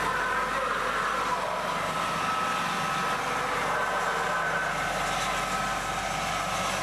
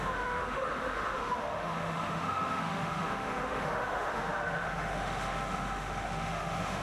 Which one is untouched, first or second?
first